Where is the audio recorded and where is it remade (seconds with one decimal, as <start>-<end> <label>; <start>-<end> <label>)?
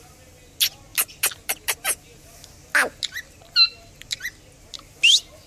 0.0-5.5 recorded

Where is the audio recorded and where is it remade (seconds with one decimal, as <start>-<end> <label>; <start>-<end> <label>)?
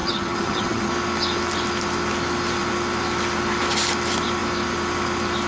0.0-0.9 remade; 0.9-5.5 recorded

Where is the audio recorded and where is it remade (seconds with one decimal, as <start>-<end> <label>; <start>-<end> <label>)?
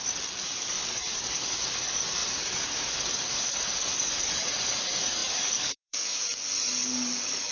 0.0-7.5 remade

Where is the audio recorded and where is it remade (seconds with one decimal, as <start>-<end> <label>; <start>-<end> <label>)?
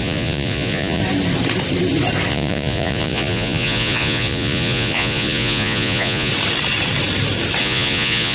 0.0-1.0 remade; 1.0-2.3 recorded; 2.3-6.3 remade; 6.3-7.6 recorded; 7.6-8.3 remade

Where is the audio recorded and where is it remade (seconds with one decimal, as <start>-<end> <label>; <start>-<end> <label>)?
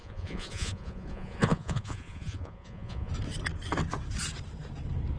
0.0-3.1 remade; 3.1-5.2 recorded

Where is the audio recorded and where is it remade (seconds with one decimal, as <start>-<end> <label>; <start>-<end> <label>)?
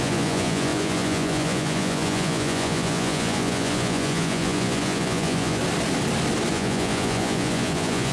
0.0-5.6 remade; 5.6-6.5 recorded; 6.5-8.1 remade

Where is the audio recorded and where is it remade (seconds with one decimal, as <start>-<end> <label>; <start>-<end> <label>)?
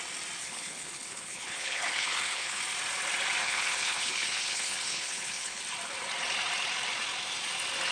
0.0-0.4 recorded; 0.4-2.6 remade; 2.6-3.4 recorded; 3.4-5.6 remade; 5.6-7.9 recorded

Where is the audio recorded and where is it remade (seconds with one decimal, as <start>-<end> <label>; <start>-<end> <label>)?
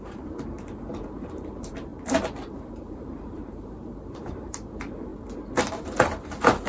0.0-1.9 remade; 1.9-2.5 recorded; 2.5-5.1 remade; 5.1-5.7 recorded; 5.7-6.7 remade